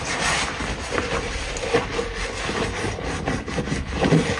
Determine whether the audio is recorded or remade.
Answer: recorded